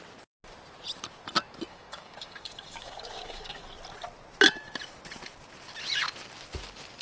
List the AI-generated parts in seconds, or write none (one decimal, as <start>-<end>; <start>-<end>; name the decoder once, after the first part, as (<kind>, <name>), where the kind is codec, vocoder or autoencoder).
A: 1.7-3.6 (codec, DAC)